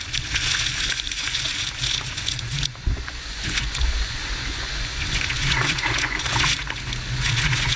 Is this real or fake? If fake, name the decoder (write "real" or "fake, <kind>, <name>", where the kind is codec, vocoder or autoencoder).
fake, vocoder, Vocos